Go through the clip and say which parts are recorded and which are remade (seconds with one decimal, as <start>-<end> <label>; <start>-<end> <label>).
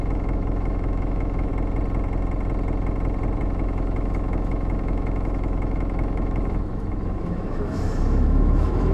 0.0-1.5 remade; 1.5-3.4 recorded; 3.4-8.9 remade